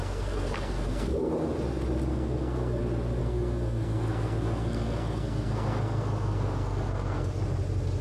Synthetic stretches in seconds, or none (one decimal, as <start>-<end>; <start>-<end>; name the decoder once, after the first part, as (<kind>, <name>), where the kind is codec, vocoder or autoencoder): 0.0-1.3 (codec, SNAC); 2.1-2.8; 3.2-7.3